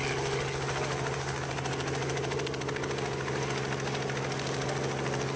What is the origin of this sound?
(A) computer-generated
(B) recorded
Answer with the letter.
B